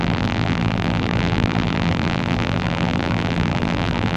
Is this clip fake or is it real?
fake